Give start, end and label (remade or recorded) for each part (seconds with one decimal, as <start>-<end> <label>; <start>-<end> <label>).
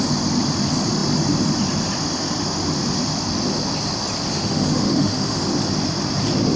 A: 0.0-4.3 recorded; 4.3-5.4 remade; 5.4-6.6 recorded